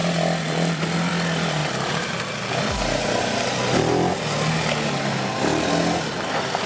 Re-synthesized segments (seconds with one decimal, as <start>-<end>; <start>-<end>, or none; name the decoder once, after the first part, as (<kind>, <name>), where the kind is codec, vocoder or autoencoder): none